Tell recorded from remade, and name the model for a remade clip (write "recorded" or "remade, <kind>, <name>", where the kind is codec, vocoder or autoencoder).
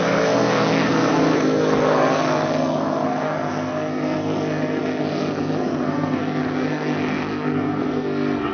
remade, codec, SNAC